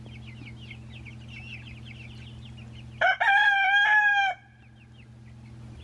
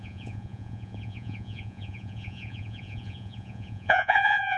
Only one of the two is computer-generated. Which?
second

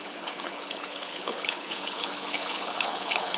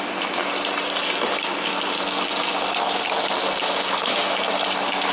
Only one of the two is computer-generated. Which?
first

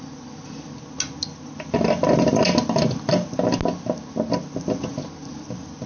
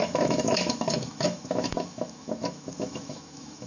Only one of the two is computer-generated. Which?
second